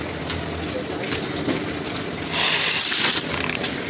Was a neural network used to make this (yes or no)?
no